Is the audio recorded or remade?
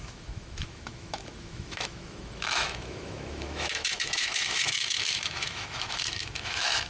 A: remade